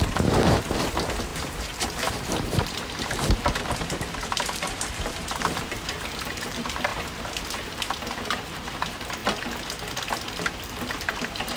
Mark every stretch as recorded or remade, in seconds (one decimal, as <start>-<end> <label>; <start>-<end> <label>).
0.0-9.2 remade; 9.2-10.1 recorded; 10.1-11.6 remade